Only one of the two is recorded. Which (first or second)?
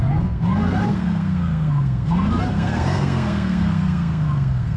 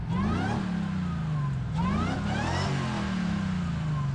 second